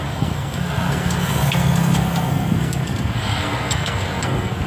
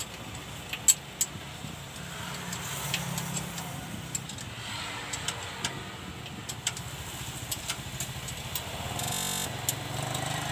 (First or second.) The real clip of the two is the second